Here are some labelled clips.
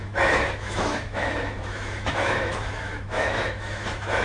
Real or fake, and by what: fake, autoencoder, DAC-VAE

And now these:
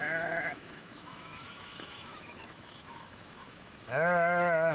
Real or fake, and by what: fake, autoencoder, DAC-VAE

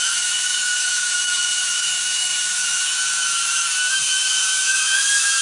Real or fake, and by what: fake, autoencoder, DAC-VAE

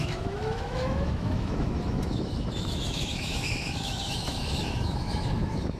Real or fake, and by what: fake, autoencoder, DAC-VAE